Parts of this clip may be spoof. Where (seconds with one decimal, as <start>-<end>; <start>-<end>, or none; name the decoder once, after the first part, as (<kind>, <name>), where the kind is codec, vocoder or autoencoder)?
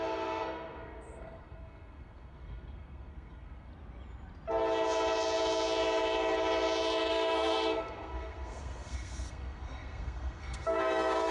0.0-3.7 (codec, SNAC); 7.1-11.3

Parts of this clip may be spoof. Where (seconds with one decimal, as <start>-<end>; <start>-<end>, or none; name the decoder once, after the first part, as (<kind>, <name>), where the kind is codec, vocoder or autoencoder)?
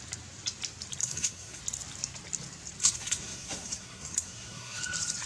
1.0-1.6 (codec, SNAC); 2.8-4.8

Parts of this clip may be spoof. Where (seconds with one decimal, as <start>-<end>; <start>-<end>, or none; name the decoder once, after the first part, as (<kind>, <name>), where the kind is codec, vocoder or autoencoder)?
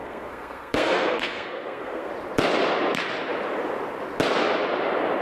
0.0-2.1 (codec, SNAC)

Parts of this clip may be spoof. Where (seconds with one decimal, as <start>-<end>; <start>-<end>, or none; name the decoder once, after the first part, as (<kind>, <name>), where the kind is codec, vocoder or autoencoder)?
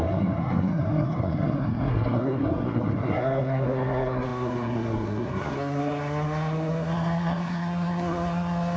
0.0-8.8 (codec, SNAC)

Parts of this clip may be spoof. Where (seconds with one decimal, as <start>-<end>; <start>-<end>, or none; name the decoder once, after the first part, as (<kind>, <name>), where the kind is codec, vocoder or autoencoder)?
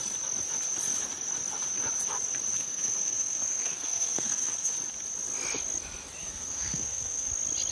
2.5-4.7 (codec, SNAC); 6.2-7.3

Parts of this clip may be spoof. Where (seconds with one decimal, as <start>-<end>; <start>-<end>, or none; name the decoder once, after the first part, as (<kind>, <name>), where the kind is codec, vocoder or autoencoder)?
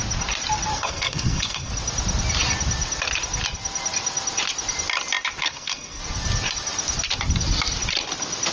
0.7-1.7 (codec, SNAC); 5.4-6.0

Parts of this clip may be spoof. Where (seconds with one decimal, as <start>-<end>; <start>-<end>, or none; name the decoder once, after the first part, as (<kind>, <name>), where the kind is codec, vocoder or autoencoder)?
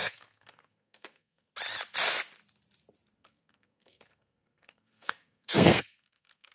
0.0-1.5 (codec, SNAC); 3.1-6.5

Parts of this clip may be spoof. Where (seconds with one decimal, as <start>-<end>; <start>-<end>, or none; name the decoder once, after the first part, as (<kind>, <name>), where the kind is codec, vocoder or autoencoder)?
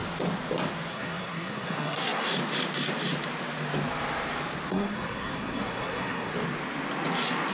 0.9-2.3 (codec, SNAC); 4.7-6.3